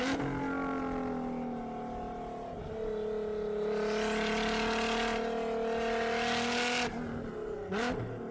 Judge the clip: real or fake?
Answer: real